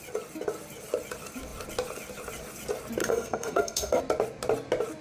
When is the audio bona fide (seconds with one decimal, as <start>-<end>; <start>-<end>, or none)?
0.0-3.0; 4.0-5.0